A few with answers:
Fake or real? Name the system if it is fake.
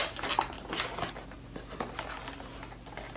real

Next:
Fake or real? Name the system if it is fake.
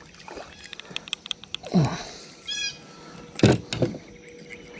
real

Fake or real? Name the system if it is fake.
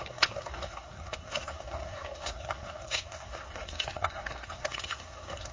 fake, codec, SNAC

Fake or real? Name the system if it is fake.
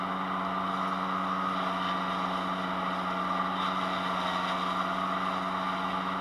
real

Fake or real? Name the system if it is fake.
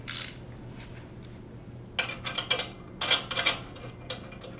real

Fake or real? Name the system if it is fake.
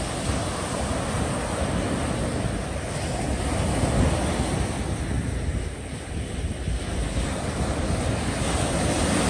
real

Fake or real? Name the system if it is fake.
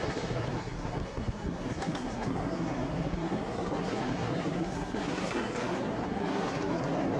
fake, codec, SNAC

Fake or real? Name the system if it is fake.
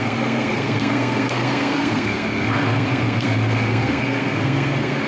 fake, codec, SNAC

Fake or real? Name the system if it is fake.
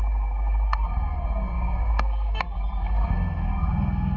fake, codec, SNAC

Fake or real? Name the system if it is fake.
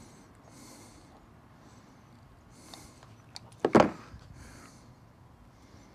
real